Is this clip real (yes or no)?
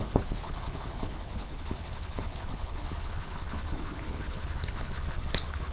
no